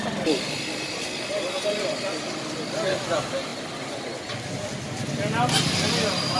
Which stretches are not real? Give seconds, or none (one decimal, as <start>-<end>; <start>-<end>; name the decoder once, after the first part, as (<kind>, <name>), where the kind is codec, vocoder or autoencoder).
none